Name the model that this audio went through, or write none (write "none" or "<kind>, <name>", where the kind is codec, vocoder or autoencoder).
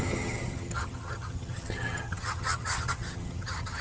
vocoder, HiFi-GAN